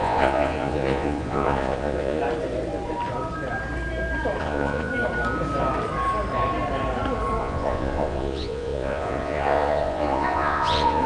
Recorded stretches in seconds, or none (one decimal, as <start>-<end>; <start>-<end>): 2.2-4.4; 4.9-7.4